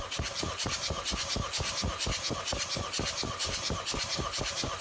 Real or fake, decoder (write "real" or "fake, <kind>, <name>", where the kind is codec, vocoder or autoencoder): real